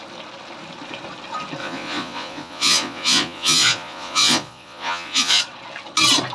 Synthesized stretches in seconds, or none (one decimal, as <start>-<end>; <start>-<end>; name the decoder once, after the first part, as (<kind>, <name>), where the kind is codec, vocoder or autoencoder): 1.6-5.4 (vocoder, Vocos)